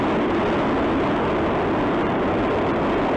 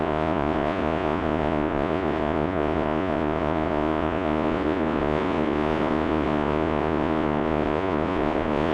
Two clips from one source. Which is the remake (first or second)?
second